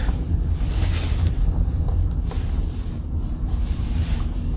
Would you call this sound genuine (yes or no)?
no